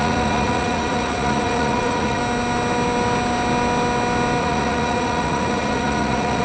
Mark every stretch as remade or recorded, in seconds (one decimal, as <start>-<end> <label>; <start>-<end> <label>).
0.0-2.2 remade; 2.2-4.4 recorded; 4.4-6.4 remade